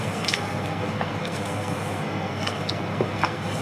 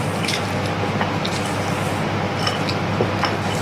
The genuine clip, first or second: second